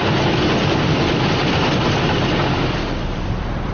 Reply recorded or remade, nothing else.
remade